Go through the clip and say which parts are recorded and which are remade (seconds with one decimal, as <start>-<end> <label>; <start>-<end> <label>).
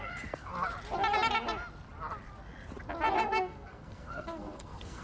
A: 0.0-0.5 remade; 0.5-3.2 recorded; 3.2-5.0 remade